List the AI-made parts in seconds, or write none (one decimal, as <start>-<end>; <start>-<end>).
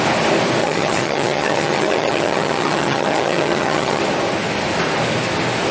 0.6-4.0